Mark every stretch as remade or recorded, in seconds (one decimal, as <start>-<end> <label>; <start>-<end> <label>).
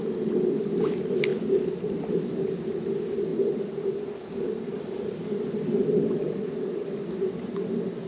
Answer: 0.0-1.3 recorded; 1.3-2.2 remade; 2.2-3.3 recorded; 3.3-4.0 remade; 4.0-4.7 recorded; 4.7-6.9 remade; 6.9-8.1 recorded